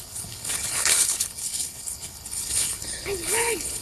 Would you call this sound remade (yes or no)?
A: yes